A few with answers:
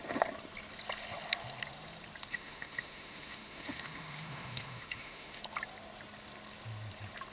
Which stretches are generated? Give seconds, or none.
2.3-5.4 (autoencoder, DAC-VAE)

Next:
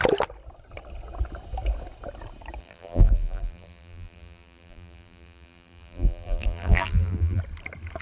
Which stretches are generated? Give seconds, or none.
2.6-7.4 (vocoder, BigVGAN v2)

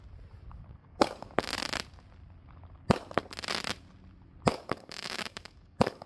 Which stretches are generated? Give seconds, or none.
0.8-1.3 (codec, DAC); 4.5-6.1

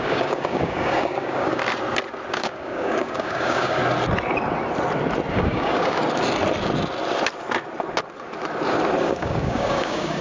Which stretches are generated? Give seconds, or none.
0.0-1.6 (codec, DAC); 2.3-3.8; 5.3-6.0; 9.0-10.2

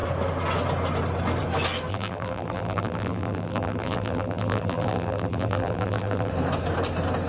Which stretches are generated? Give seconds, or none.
1.9-6.3 (vocoder, BigVGAN v2)